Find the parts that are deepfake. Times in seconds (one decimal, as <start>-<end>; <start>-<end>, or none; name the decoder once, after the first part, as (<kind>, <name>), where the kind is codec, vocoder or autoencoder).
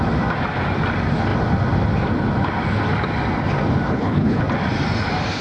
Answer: 3.9-4.4 (codec, HILCodec)